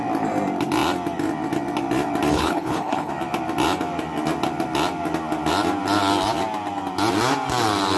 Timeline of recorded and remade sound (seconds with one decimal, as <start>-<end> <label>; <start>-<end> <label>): 0.0-2.3 recorded; 2.3-3.1 remade; 3.1-8.0 recorded